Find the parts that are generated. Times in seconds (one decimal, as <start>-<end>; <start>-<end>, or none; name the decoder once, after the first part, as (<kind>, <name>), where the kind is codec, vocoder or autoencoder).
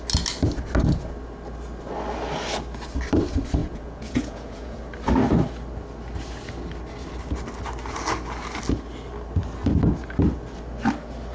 3.6-4.8 (vocoder, Vocos)